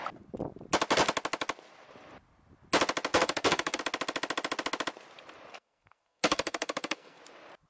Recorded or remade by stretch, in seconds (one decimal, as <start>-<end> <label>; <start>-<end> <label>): 0.0-3.1 recorded; 3.1-3.8 remade; 3.8-5.5 recorded; 5.5-7.2 remade; 7.2-7.7 recorded